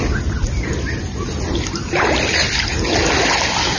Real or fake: real